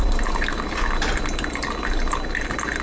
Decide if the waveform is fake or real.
real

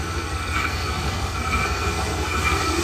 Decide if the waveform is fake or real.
fake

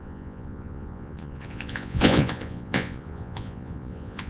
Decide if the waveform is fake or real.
fake